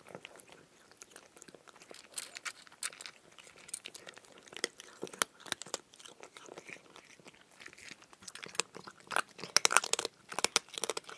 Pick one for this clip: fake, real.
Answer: real